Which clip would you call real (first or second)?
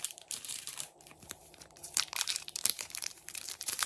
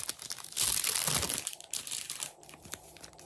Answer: second